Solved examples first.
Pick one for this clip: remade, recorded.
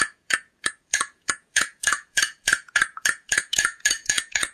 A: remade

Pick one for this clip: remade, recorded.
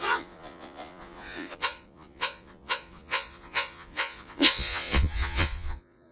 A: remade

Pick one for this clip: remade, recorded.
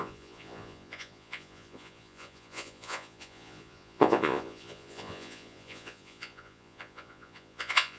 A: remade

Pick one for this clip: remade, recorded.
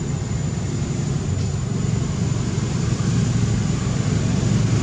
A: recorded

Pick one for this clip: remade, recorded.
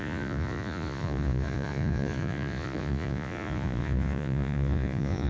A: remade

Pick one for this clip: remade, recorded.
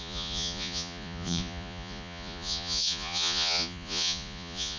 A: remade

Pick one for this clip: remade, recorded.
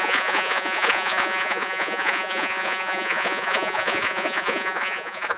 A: remade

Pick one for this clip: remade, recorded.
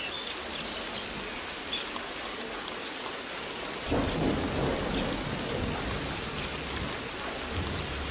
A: recorded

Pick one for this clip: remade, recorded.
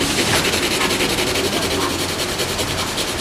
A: recorded